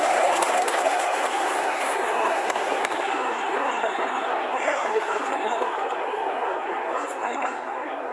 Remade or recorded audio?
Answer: remade